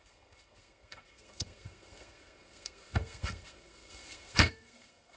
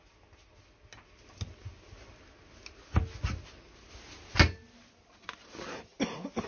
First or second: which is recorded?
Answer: second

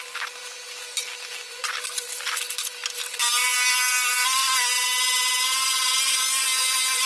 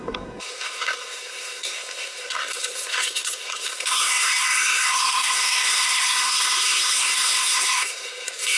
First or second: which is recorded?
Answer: first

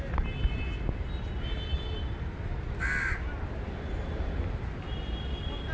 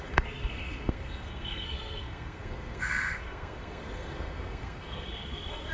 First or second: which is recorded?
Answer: first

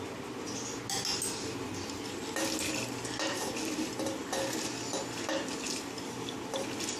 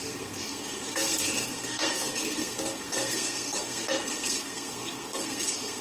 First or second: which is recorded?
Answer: first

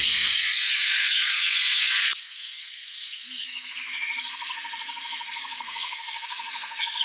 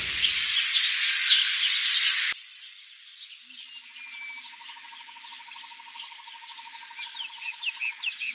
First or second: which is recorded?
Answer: second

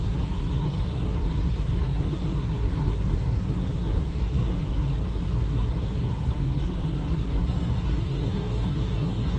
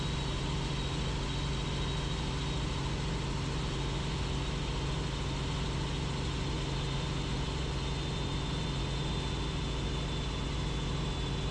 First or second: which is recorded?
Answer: second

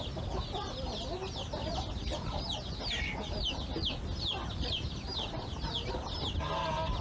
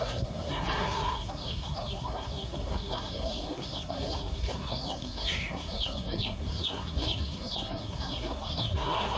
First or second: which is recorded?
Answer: first